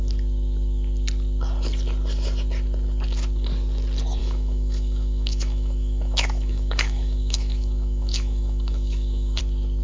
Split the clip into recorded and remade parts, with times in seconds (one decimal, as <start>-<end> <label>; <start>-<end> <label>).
0.0-4.2 recorded; 4.2-9.4 remade; 9.4-9.8 recorded

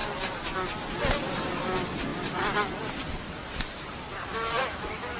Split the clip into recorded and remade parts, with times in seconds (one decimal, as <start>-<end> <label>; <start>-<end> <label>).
0.0-5.2 recorded

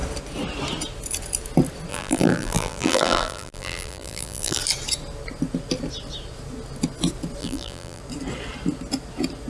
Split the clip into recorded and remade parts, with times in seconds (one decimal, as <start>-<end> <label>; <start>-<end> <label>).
0.0-1.9 recorded; 1.9-4.6 remade; 4.6-7.4 recorded; 7.4-8.0 remade; 8.0-9.5 recorded

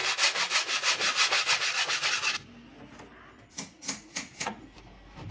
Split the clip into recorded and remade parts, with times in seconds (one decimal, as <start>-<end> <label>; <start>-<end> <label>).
0.0-3.5 recorded; 3.5-4.6 remade; 4.6-5.3 recorded

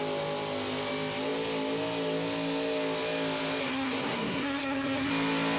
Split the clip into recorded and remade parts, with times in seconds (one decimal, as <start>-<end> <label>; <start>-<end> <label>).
0.0-3.6 recorded; 3.6-5.1 remade; 5.1-5.6 recorded

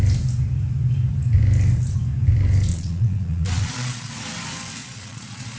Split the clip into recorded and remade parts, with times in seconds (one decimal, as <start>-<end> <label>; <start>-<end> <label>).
0.0-2.7 recorded; 2.7-4.1 remade; 4.1-4.8 recorded; 4.8-5.6 remade

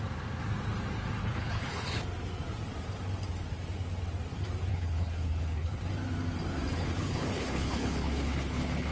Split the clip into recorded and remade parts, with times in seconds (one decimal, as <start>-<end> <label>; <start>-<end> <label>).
0.0-1.2 recorded; 1.2-2.0 remade; 2.0-4.7 recorded; 4.7-5.8 remade; 5.8-6.7 recorded; 6.7-8.9 remade